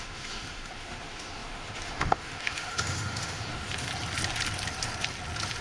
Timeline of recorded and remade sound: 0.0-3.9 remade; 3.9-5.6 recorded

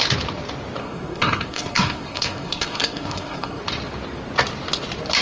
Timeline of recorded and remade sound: 0.0-0.8 recorded; 0.8-3.6 remade; 3.6-5.2 recorded

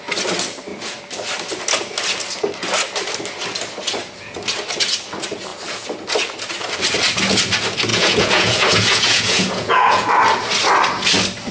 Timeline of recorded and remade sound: 0.0-7.9 recorded; 7.9-10.1 remade; 10.1-11.5 recorded

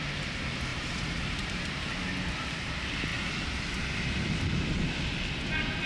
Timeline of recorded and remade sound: 0.0-0.7 recorded; 0.7-1.9 remade; 1.9-5.9 recorded

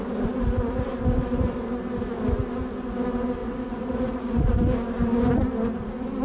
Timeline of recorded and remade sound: 0.0-3.4 recorded; 3.4-4.5 remade; 4.5-6.2 recorded

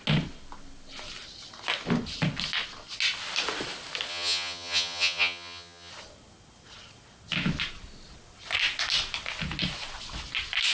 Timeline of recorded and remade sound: 0.0-4.1 recorded; 4.1-5.9 remade; 5.9-10.7 recorded